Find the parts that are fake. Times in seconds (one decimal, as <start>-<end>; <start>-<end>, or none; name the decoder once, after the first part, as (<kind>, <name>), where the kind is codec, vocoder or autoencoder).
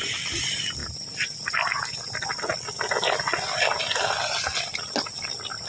none